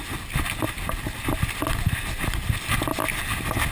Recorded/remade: recorded